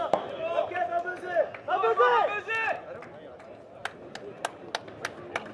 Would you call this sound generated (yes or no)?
no